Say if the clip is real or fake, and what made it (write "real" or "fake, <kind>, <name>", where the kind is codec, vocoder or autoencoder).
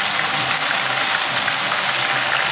real